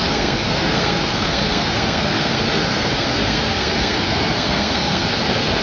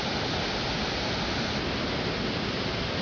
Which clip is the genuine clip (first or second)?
second